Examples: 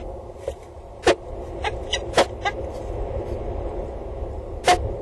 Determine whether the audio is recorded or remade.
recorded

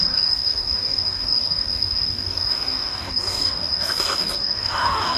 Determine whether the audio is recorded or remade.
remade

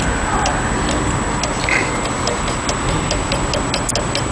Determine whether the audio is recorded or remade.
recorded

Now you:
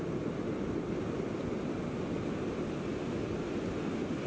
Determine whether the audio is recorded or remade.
recorded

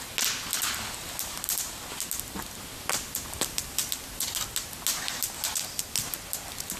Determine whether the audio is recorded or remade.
recorded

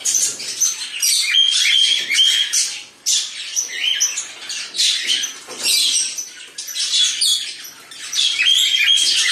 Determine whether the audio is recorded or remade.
recorded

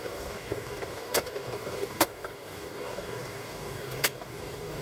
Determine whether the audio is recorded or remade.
remade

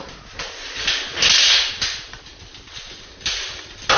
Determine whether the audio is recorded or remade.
recorded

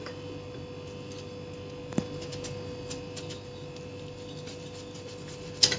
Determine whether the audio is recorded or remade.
recorded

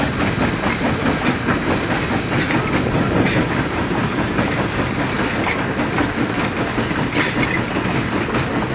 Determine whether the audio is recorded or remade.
recorded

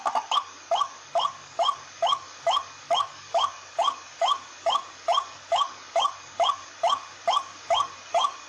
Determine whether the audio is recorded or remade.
remade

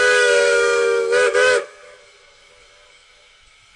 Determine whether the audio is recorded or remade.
remade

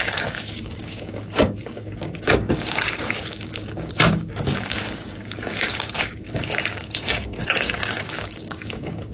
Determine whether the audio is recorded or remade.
remade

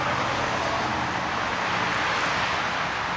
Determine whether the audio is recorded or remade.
recorded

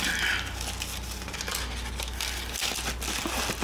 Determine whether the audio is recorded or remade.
recorded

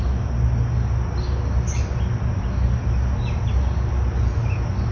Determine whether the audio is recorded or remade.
recorded